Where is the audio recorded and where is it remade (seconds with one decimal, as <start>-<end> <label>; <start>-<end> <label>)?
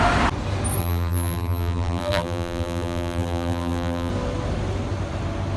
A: 0.0-0.8 recorded; 0.8-4.1 remade; 4.1-5.6 recorded